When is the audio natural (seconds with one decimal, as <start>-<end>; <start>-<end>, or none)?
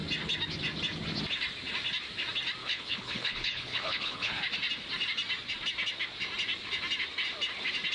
0.0-2.6; 4.4-7.9